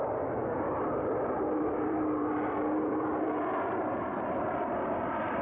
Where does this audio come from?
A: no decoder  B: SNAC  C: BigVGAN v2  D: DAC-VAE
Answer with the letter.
C